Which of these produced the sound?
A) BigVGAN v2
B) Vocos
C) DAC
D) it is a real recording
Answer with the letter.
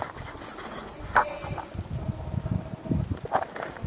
D